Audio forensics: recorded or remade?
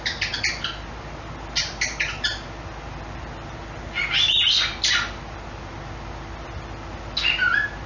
recorded